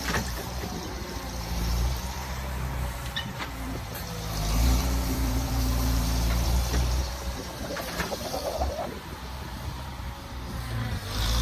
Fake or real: fake